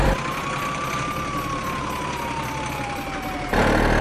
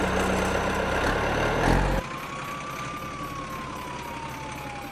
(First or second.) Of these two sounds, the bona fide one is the second